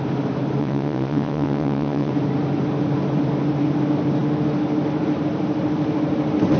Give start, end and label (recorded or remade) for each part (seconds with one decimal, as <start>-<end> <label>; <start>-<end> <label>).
0.0-0.6 recorded; 0.6-2.1 remade; 2.1-6.6 recorded